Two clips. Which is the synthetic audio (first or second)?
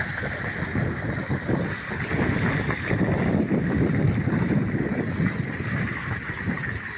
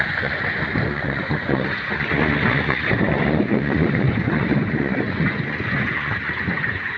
second